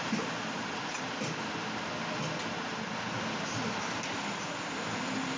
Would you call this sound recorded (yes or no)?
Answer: yes